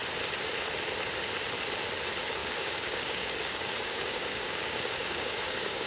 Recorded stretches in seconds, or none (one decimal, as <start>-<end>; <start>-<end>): 0.0-2.4